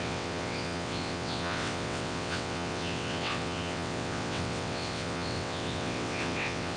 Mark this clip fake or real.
fake